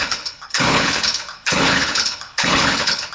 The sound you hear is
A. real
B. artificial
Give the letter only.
B